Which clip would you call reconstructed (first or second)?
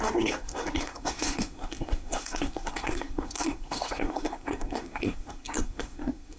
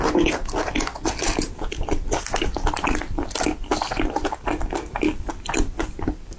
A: first